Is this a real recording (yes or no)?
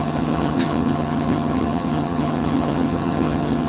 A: no